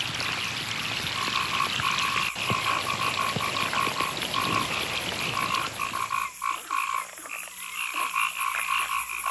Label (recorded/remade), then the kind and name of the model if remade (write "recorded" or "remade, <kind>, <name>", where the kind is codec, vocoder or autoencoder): recorded